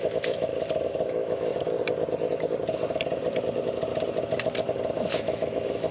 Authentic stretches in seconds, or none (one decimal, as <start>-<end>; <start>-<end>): 0.5-1.1; 1.5-5.0